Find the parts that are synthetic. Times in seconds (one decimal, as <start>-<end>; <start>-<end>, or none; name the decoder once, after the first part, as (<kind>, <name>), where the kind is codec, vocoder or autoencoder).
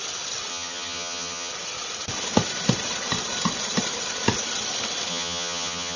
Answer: 0.5-1.5 (vocoder, HiFi-GAN); 5.1-6.0